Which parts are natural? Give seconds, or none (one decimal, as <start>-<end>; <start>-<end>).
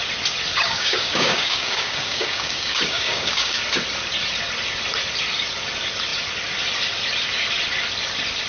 0.0-0.5; 3.6-8.5